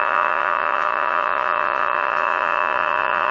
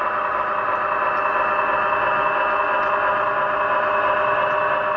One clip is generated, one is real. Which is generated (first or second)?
first